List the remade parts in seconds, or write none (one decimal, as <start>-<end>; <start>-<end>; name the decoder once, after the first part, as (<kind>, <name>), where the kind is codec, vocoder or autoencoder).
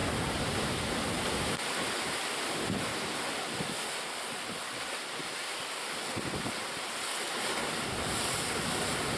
none